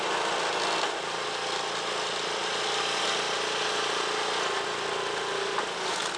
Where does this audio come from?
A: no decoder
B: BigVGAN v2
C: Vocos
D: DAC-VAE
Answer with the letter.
A